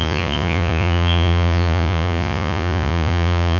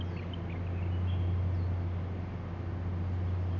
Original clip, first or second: second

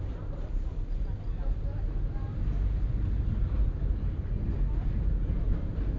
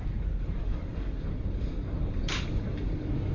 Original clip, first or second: first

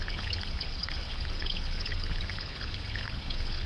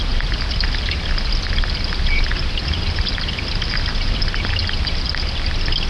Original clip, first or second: second